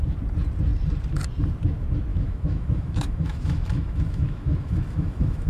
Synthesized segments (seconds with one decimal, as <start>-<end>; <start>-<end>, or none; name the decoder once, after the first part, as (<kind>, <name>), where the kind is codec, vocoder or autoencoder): 2.1-5.5 (autoencoder, DAC-VAE)